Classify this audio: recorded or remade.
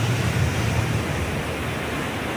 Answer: recorded